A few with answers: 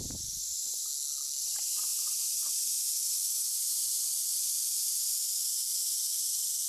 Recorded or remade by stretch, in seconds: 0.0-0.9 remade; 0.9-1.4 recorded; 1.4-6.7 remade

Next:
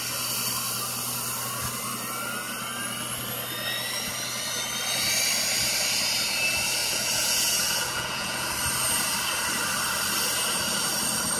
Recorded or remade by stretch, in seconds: 0.0-6.8 recorded; 6.8-8.5 remade; 8.5-11.4 recorded

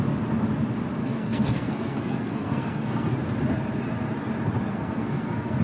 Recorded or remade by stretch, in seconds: 0.0-1.0 recorded; 1.0-3.1 remade; 3.1-4.7 recorded; 4.7-5.6 remade

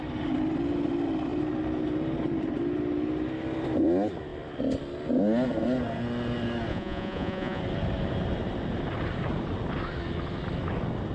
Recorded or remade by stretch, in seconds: 0.0-6.7 recorded; 6.7-7.6 remade; 7.6-11.1 recorded